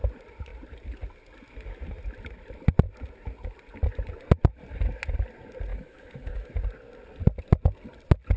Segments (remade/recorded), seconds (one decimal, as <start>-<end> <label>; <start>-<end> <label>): 0.0-5.7 recorded; 5.7-6.5 remade; 6.5-8.4 recorded